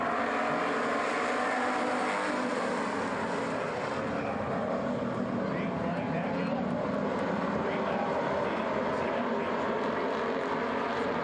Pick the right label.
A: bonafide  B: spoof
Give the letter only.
A